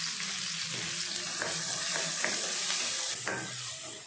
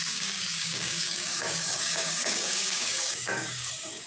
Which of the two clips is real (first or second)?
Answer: first